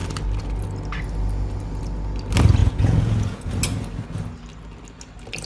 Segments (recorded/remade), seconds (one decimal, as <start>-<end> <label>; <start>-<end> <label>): 0.0-2.6 recorded; 2.6-3.5 remade; 3.5-5.4 recorded